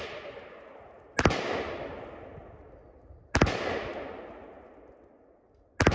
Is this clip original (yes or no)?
yes